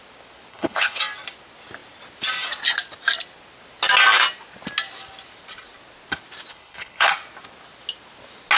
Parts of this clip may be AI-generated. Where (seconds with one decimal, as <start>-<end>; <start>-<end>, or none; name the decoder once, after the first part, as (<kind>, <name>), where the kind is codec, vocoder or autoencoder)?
0.5-1.0 (codec, HILCodec); 6.5-7.1